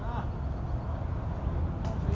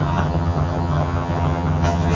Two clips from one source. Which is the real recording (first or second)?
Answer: first